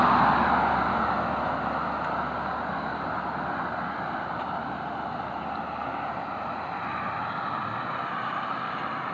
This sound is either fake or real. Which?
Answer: real